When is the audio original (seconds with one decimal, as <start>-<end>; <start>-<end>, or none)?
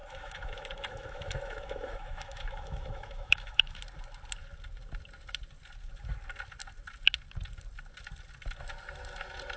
3.8-9.6